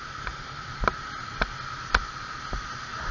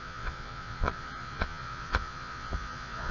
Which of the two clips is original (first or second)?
first